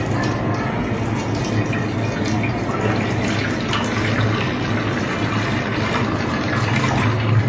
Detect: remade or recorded recorded